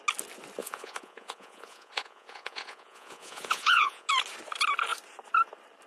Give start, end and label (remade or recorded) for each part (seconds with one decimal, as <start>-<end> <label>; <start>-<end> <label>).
0.0-0.6 recorded; 0.6-4.1 remade; 4.1-5.9 recorded